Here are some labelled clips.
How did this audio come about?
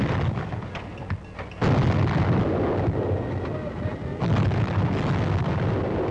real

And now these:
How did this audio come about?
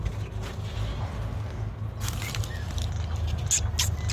real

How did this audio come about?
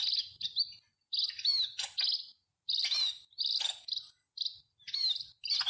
real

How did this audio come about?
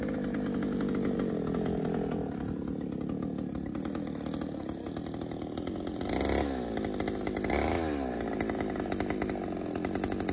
real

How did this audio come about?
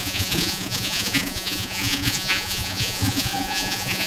fake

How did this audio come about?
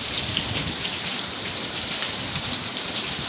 fake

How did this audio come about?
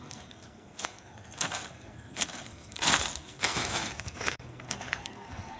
fake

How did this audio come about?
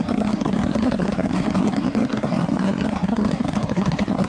fake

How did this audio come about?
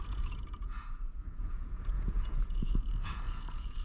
fake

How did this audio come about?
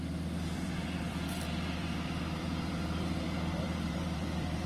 fake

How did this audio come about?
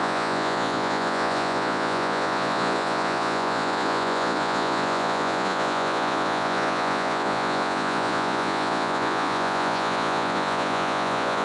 fake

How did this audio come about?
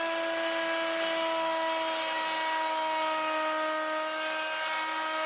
real